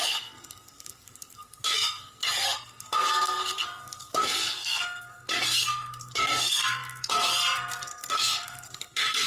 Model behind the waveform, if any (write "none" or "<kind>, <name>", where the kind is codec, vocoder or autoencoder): codec, SNAC